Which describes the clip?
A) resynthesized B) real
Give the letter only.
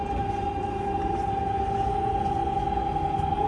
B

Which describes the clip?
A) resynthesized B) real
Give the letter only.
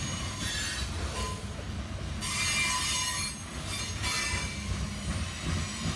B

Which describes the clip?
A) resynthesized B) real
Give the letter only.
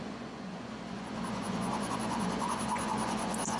A